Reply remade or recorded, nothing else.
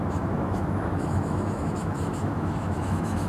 remade